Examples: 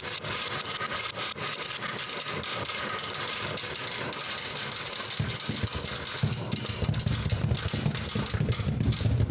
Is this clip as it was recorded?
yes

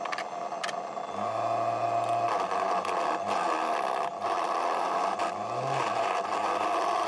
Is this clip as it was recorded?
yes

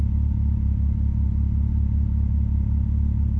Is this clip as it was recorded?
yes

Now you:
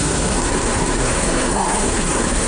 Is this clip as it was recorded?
no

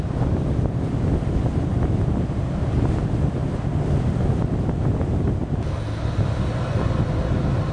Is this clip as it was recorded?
yes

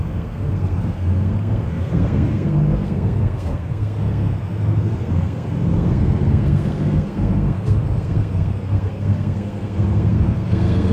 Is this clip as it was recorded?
no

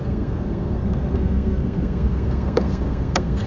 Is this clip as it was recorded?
no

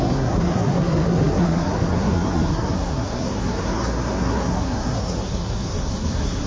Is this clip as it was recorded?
no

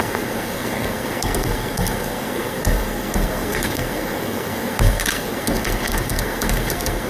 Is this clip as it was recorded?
no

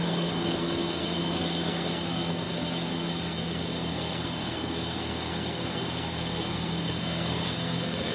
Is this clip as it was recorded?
no